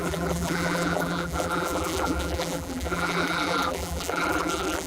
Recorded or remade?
remade